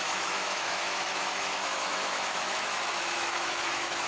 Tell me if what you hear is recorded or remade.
remade